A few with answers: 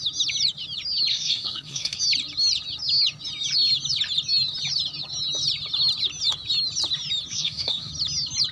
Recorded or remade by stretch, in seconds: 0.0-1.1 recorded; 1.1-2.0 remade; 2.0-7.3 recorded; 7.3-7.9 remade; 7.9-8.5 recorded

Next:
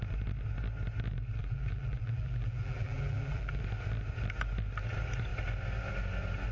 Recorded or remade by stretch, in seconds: 0.0-1.4 recorded; 1.4-3.6 remade; 3.6-6.5 recorded

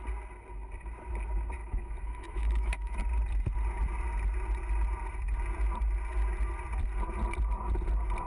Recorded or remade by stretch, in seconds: 0.0-1.6 recorded; 1.6-3.0 remade; 3.0-8.3 recorded